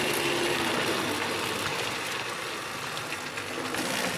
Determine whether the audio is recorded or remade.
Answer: recorded